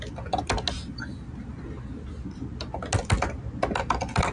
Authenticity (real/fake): real